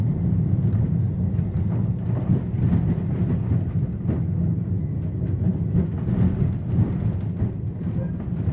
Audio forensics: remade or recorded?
recorded